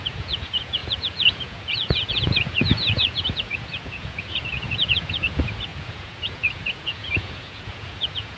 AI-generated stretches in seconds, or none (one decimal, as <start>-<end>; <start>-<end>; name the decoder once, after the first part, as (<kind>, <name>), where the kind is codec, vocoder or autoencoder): 0.0-8.4 (vocoder, Vocos)